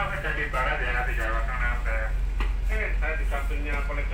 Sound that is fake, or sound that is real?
real